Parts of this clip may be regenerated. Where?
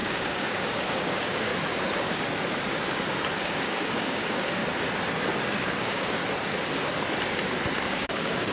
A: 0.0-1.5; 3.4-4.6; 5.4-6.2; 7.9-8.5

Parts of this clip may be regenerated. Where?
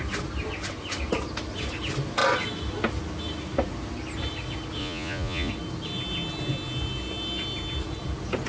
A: 4.8-5.5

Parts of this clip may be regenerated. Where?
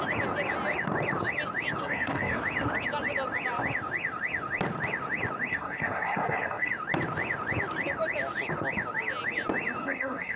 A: 1.8-2.4; 5.5-6.7; 9.8-10.4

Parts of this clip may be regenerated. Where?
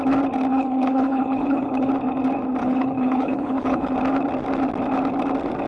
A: 0.5-1.9; 2.6-3.9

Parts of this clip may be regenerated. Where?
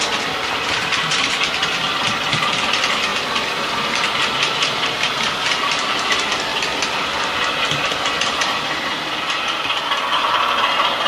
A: 0.0-6.5; 9.4-11.1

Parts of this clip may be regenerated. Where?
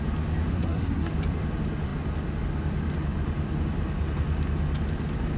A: 0.5-1.1